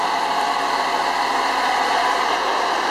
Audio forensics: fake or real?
real